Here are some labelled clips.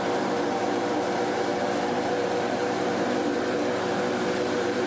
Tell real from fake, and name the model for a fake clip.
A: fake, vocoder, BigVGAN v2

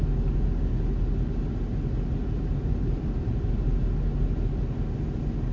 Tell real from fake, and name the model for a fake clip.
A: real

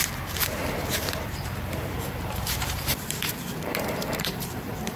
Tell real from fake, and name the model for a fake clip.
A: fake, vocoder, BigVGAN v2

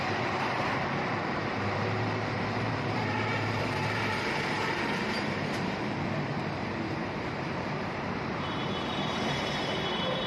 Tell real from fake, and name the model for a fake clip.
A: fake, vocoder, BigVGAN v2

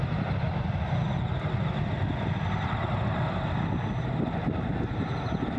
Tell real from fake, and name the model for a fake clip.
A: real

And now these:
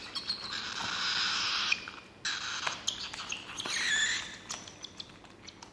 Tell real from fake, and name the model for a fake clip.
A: real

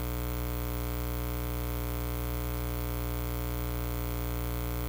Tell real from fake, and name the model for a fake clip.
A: real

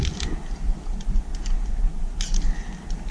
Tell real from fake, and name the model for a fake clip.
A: real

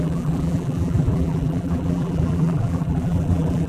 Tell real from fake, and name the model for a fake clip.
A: fake, vocoder, BigVGAN v2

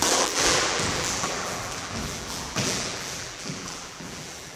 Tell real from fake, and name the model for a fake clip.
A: fake, vocoder, BigVGAN v2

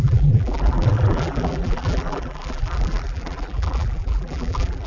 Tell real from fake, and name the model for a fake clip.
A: fake, vocoder, BigVGAN v2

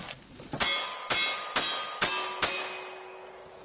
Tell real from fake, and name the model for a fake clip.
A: real